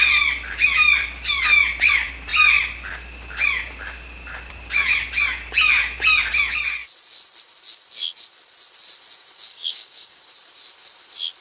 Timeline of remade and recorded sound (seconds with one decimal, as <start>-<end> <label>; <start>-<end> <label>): 0.0-9.5 recorded; 9.5-10.2 remade; 10.2-11.4 recorded